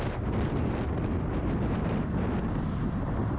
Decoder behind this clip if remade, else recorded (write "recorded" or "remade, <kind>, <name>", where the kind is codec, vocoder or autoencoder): recorded